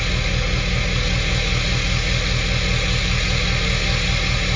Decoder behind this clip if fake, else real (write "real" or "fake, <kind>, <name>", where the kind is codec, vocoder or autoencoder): real